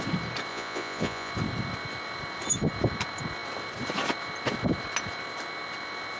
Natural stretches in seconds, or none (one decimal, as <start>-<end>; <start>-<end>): 0.0-0.5; 1.3-6.2